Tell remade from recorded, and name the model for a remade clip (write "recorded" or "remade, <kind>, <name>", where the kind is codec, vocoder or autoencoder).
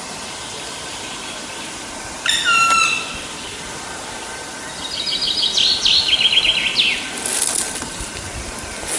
recorded